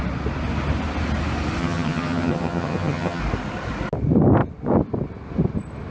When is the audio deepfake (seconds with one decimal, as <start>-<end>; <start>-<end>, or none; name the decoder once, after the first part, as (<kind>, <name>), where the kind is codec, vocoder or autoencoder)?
1.6-3.2 (vocoder, HiFi-GAN)